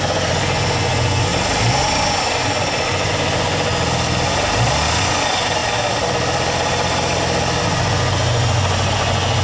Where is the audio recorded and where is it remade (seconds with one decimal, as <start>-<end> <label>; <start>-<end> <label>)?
0.0-1.3 remade; 1.3-1.8 recorded; 1.8-3.7 remade; 3.7-5.0 recorded; 5.0-5.6 remade; 5.6-7.6 recorded; 7.6-9.4 remade